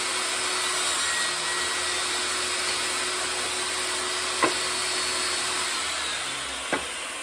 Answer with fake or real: real